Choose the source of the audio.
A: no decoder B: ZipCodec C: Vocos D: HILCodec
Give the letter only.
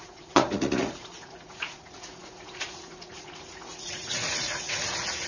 C